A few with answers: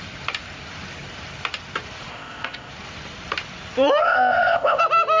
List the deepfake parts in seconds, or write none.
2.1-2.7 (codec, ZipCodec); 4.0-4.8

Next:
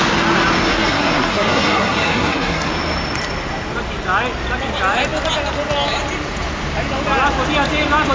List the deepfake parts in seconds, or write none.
0.7-2.7 (codec, SNAC)